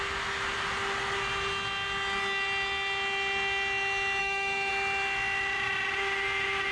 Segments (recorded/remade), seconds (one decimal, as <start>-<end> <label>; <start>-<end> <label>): 0.0-4.2 recorded; 4.2-4.7 remade; 4.7-6.7 recorded